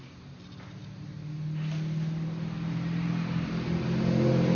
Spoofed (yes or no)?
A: no